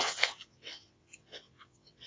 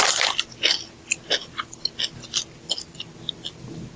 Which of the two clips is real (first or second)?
second